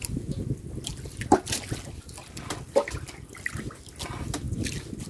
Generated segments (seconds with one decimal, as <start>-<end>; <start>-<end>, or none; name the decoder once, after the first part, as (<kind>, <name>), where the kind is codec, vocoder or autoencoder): none